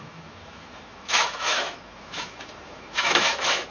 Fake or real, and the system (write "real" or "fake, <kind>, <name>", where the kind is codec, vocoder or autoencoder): fake, autoencoder, DAC-VAE